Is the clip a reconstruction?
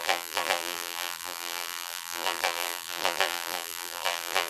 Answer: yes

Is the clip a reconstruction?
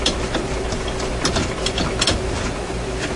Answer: yes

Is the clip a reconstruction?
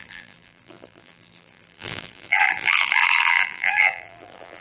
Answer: yes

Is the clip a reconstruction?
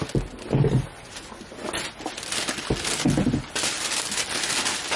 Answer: no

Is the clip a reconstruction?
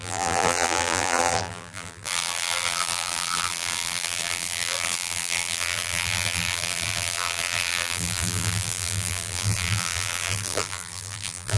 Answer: yes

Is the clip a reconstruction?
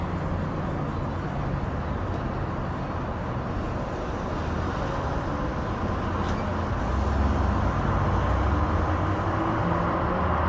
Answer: no